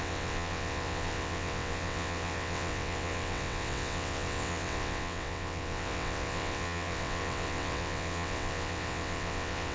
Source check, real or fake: fake